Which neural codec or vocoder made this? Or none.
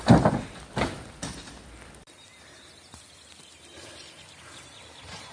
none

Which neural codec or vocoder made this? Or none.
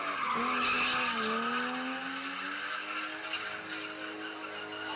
none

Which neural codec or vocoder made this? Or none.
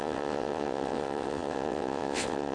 vocoder, WaveNeXt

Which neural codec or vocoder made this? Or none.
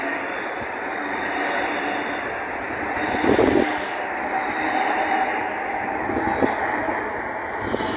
none